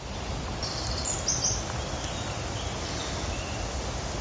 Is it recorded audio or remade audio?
recorded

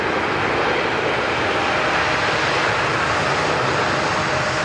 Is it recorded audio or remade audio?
recorded